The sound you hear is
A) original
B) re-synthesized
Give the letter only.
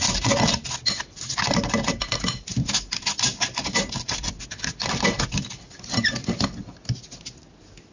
A